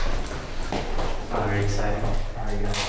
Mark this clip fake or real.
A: real